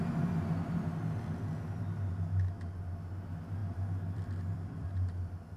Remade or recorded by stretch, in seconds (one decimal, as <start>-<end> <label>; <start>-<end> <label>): 0.0-3.6 recorded; 3.6-4.9 remade; 4.9-5.6 recorded